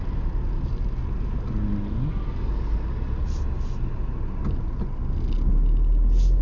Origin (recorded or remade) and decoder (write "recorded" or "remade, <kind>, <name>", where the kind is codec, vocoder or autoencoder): recorded